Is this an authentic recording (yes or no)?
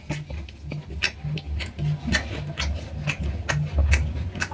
yes